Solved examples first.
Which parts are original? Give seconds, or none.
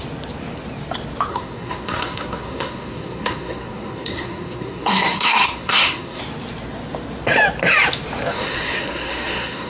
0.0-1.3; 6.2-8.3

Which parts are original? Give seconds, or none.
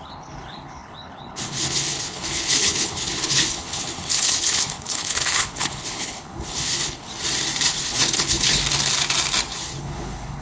7.1-7.7; 8.6-9.8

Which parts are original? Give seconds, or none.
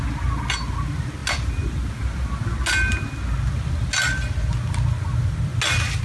0.0-6.0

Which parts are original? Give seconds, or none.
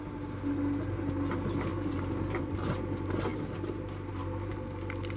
0.0-5.2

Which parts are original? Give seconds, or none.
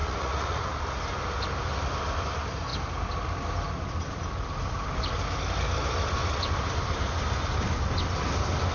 0.8-8.7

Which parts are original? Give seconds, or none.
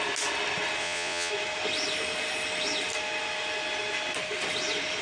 0.0-0.8; 1.3-5.0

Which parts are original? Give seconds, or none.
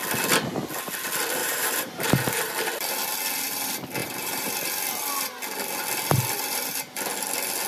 0.0-1.4; 2.5-4.0; 4.5-7.7